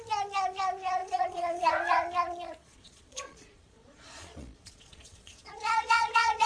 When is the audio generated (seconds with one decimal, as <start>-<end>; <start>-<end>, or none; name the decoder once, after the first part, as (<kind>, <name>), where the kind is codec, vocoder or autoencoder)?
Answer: 1.0-1.7 (vocoder, Vocos); 2.6-6.5